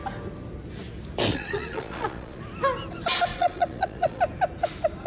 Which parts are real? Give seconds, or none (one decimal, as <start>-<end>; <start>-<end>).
0.0-1.3; 2.4-3.3; 4.2-5.1